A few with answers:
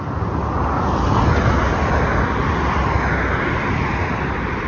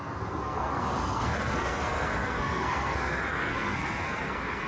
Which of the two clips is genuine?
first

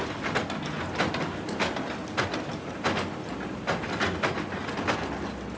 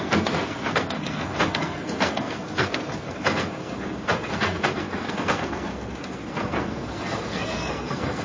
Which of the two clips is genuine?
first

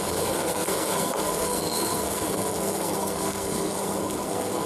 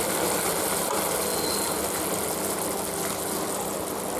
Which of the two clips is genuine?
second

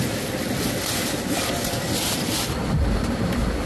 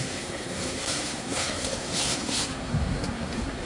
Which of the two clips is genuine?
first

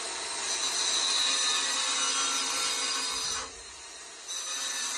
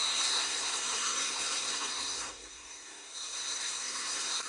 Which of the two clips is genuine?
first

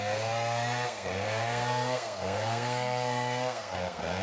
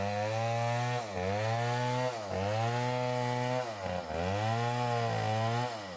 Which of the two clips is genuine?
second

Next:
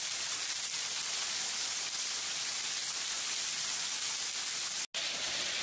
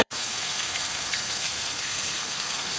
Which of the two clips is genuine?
first